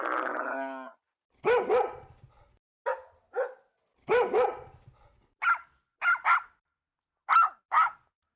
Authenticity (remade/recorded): recorded